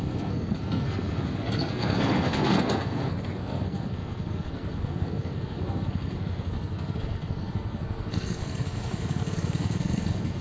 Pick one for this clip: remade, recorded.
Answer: remade